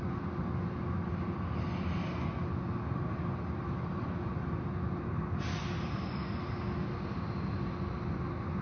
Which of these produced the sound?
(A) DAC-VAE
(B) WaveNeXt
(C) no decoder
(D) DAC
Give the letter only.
C